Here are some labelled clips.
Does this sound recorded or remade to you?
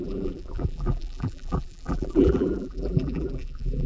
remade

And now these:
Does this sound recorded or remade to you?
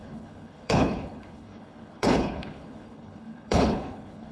remade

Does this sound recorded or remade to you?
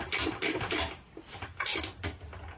recorded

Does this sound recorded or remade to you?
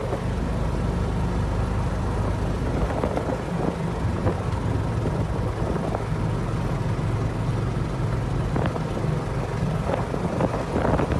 recorded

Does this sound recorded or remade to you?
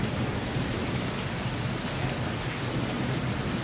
recorded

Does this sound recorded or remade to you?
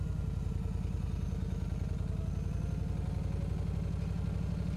recorded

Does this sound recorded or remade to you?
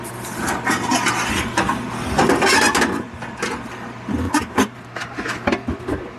recorded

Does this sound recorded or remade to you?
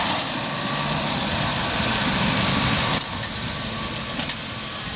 recorded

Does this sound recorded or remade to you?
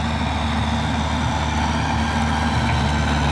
recorded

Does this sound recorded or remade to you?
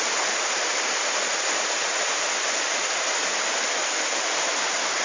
remade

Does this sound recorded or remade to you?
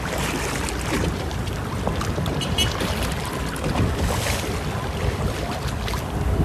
recorded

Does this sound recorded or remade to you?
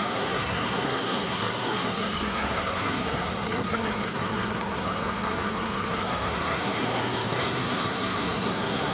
remade